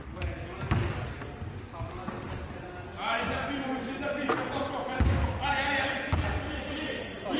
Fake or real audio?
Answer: real